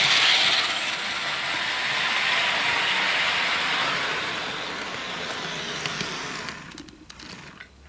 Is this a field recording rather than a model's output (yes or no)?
yes